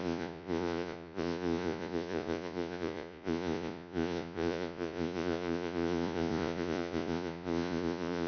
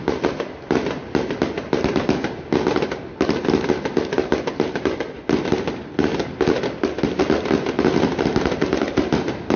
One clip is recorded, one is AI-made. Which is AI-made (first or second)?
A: first